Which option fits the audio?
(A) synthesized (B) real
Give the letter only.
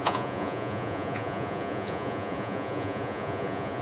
A